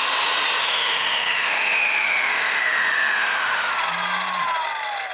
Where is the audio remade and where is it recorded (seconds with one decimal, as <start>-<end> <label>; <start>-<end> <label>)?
0.0-0.6 recorded; 0.6-3.7 remade; 3.7-5.1 recorded